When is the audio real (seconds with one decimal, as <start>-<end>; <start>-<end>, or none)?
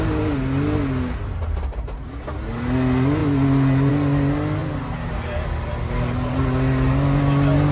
0.0-7.7